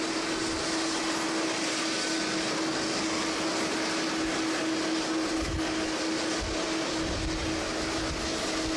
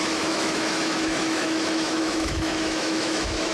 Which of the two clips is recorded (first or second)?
first